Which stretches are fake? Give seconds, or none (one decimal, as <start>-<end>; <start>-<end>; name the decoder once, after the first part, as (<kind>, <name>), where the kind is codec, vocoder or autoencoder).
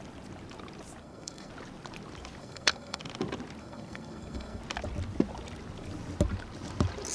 1.0-1.5 (codec, SNAC); 2.4-3.0; 3.6-4.6